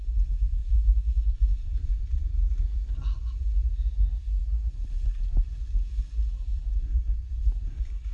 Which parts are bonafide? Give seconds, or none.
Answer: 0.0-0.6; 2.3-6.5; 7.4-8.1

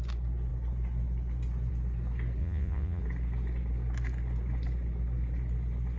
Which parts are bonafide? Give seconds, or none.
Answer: 0.0-2.4; 3.0-6.0

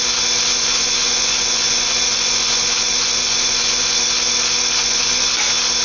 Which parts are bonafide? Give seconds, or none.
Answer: 0.0-0.5; 4.0-4.8; 5.3-5.8

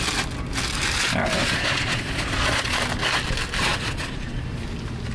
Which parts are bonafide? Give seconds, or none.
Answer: 0.0-1.4; 2.8-3.7; 4.4-5.1

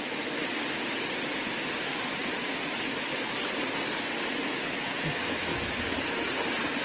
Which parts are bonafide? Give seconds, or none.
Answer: 0.0-6.8

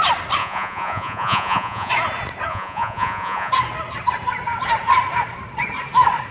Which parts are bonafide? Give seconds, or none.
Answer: 0.0-0.4; 1.9-2.5; 3.5-6.3

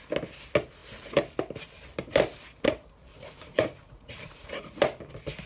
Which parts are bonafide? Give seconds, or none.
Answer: 0.0-3.1; 4.8-5.5